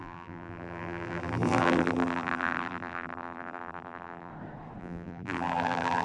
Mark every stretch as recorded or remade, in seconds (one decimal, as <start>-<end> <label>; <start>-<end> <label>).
0.0-4.3 remade; 4.3-4.8 recorded; 4.8-6.0 remade